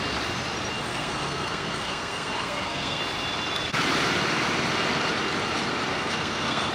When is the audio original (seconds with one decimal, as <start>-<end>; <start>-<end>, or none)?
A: 0.0-0.9; 3.0-5.9